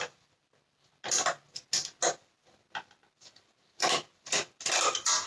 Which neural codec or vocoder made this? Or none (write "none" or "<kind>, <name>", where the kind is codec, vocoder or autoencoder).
none